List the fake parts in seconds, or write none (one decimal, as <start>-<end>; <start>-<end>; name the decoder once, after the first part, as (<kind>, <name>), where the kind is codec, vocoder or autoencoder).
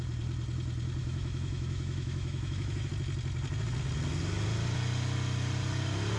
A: 1.0-2.9 (autoencoder, DAC-VAE)